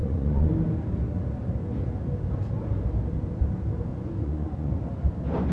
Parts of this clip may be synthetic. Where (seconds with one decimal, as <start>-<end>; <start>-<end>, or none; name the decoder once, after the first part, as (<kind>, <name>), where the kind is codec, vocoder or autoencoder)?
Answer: 0.0-0.5 (vocoder, Vocos); 3.9-4.7